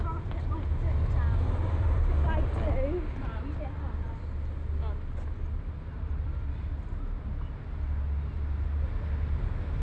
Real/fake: real